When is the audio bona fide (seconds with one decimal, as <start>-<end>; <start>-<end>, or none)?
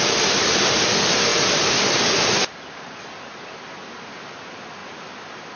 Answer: 0.0-5.6